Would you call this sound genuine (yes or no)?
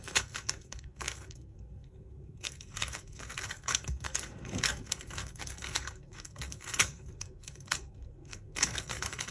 no